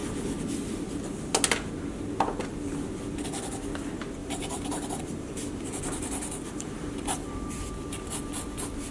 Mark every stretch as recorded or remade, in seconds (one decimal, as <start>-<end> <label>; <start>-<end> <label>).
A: 0.0-4.2 recorded; 4.2-7.7 remade; 7.7-8.9 recorded